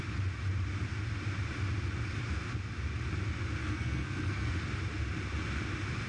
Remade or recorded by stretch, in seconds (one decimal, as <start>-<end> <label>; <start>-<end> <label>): 0.0-3.6 recorded; 3.6-4.5 remade; 4.5-6.1 recorded